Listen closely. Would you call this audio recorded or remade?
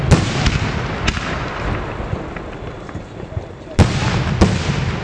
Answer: recorded